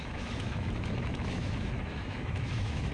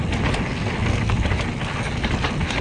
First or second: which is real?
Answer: second